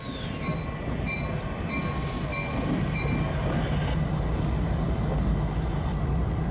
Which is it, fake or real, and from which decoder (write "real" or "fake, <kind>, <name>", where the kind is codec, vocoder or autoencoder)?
real